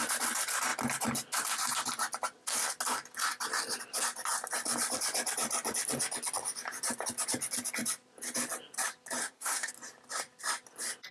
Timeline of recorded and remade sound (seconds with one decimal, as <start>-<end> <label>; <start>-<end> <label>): 0.0-9.2 recorded; 9.2-9.7 remade; 9.7-11.1 recorded

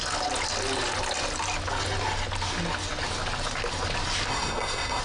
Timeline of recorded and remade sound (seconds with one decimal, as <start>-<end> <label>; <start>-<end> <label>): 0.0-4.3 recorded; 4.3-5.0 remade

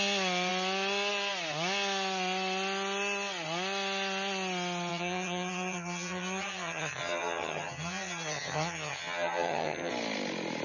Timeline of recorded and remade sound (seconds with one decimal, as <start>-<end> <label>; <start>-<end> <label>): 0.0-4.9 recorded; 4.9-9.9 remade; 9.9-10.6 recorded